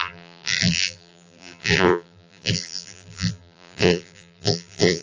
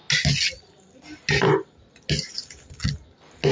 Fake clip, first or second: first